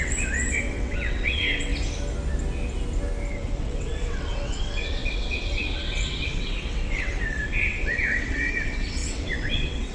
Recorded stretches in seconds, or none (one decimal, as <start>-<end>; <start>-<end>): 1.7-3.3